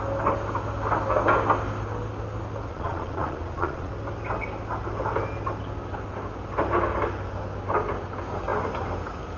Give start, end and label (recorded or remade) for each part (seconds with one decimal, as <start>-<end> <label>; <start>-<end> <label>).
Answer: 0.0-2.7 recorded; 2.7-3.9 remade; 3.9-9.4 recorded